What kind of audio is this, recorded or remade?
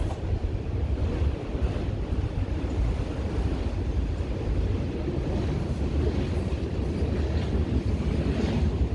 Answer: recorded